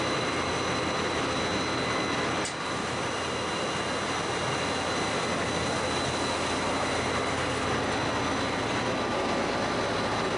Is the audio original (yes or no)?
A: yes